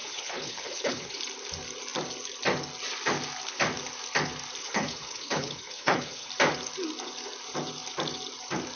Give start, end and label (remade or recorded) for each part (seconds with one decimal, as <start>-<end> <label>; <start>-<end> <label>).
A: 0.0-1.2 remade; 1.2-4.6 recorded; 4.6-6.3 remade; 6.3-8.8 recorded